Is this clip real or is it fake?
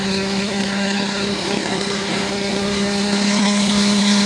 fake